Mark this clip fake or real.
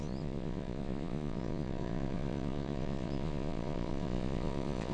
fake